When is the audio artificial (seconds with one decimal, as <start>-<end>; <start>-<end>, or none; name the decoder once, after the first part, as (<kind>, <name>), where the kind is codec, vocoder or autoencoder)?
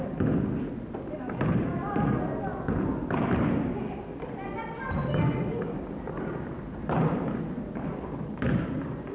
none